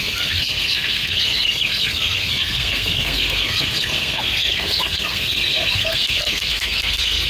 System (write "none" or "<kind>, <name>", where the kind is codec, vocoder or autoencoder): codec, SNAC